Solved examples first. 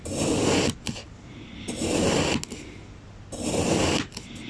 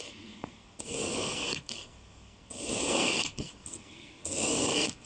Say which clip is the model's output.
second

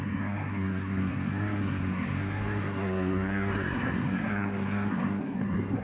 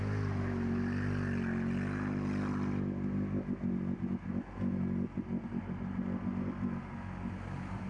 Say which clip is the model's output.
first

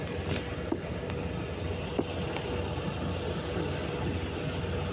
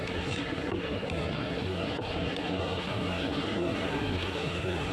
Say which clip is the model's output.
second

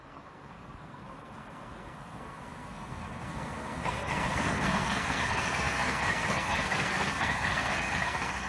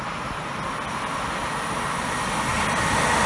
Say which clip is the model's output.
first